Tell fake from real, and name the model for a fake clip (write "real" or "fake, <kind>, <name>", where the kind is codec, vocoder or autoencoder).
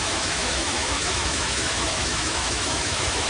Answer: fake, autoencoder, DAC-VAE